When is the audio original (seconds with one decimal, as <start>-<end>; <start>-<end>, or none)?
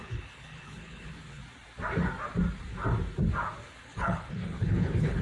1.4-3.6